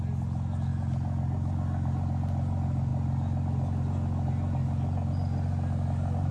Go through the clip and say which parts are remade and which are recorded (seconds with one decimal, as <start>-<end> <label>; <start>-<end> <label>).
0.0-6.3 recorded